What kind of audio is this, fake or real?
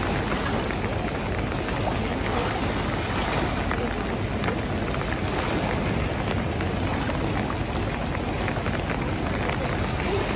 real